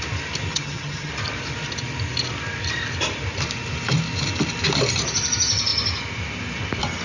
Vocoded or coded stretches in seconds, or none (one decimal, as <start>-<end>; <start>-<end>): 0.5-1.1

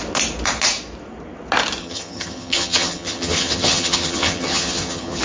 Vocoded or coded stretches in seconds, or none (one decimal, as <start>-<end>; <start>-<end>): 1.8-5.2

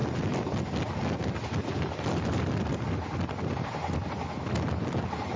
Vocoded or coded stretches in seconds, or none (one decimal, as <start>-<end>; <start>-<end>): none

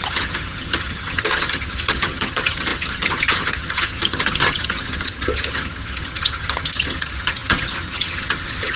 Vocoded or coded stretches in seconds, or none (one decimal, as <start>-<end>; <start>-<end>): 0.0-8.8

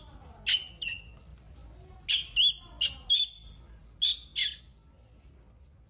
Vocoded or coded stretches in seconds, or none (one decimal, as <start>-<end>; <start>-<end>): none

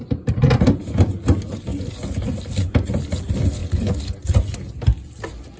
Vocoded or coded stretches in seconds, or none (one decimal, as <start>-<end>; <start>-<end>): none